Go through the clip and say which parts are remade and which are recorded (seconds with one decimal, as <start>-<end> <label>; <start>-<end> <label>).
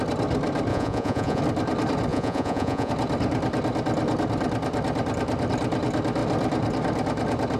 0.0-0.7 recorded; 0.7-1.4 remade; 1.4-2.1 recorded; 2.1-2.9 remade; 2.9-7.6 recorded